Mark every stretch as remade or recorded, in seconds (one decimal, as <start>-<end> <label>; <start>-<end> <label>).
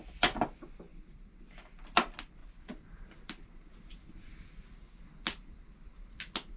0.0-2.4 recorded; 2.4-5.0 remade; 5.0-6.6 recorded